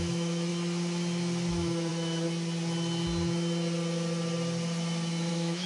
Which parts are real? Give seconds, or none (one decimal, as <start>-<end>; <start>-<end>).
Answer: 0.5-1.5; 1.9-5.3